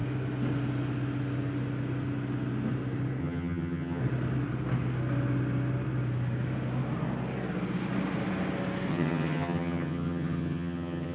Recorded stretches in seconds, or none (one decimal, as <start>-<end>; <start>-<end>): 0.0-3.2; 4.0-8.9